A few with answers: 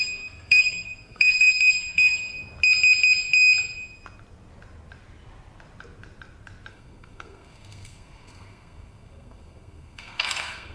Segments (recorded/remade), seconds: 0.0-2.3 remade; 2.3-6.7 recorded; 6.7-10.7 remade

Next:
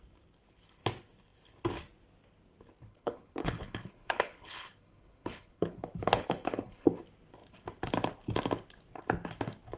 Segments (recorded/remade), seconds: 0.0-2.8 recorded; 2.8-7.0 remade; 7.0-9.8 recorded